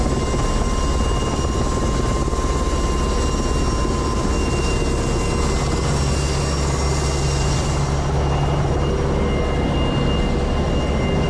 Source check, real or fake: real